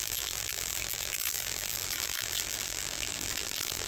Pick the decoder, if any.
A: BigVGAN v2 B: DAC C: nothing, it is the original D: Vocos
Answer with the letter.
A